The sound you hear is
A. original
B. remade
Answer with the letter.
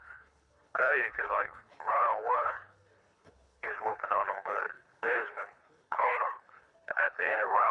B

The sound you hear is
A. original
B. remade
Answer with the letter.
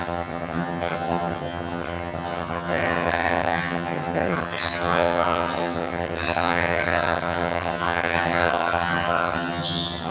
B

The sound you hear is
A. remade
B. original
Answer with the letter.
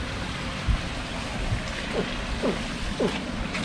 B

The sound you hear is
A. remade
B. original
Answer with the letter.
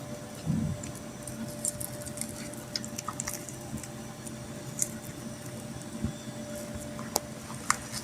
B